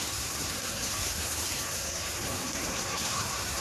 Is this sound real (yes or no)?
no